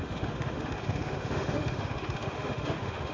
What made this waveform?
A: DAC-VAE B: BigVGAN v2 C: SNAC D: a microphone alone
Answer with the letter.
A